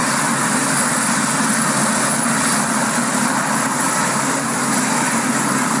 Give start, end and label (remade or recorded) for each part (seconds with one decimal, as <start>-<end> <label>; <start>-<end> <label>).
0.0-5.8 recorded